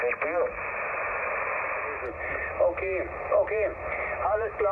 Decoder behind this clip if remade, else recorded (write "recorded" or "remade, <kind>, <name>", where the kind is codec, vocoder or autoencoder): recorded